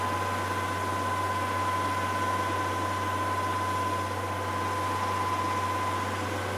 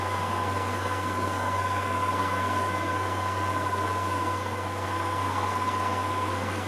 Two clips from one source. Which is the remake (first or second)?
second